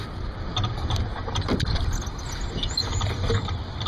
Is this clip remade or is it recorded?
recorded